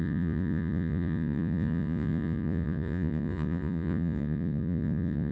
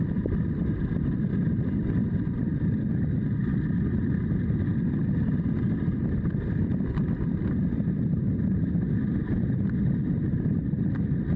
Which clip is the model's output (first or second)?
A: first